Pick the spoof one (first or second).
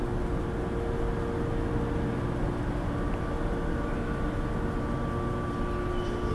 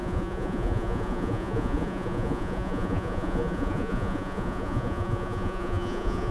second